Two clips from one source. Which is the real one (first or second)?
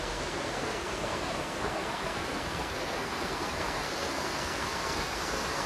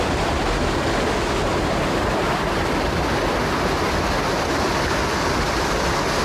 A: second